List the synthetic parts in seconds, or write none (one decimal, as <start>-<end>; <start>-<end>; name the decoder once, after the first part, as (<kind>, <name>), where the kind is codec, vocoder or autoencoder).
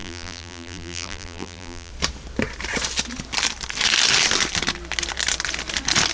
0.0-1.9 (vocoder, BigVGAN v2)